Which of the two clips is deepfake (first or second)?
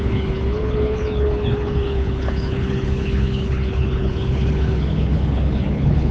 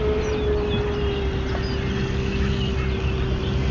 first